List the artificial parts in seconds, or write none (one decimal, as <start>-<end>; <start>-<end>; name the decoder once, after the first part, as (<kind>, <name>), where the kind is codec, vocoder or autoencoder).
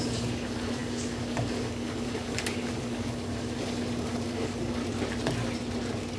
0.0-4.8 (codec, DAC)